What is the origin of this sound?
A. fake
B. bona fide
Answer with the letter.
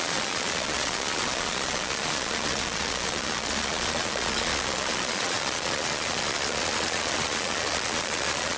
A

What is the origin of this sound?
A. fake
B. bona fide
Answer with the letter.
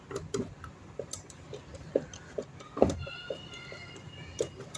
B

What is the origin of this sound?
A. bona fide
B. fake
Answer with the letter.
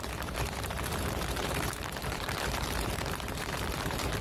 B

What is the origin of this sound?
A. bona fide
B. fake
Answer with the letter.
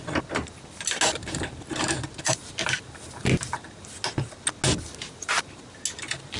A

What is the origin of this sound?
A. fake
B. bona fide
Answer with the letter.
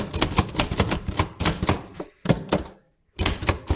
B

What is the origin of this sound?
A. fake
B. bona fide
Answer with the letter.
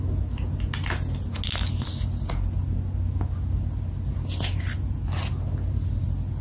B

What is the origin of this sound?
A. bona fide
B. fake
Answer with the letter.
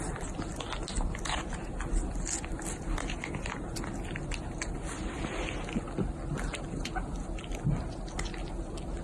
A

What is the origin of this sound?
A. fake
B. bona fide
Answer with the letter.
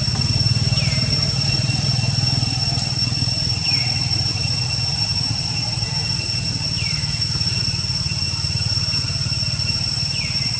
B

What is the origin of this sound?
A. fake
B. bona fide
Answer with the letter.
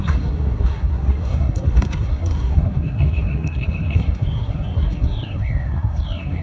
A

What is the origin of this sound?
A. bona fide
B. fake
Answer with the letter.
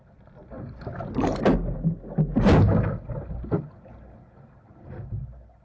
A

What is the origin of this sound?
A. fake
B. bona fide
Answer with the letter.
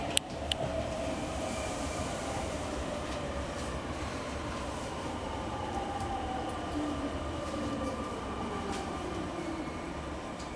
A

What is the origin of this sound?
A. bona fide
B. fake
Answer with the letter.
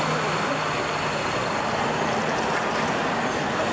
A